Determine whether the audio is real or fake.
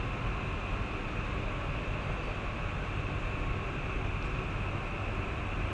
real